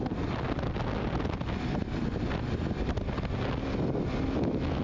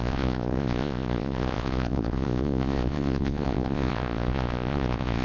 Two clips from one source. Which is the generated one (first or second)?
second